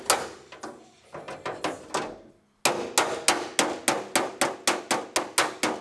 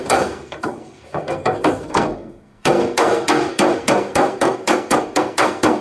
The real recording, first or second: first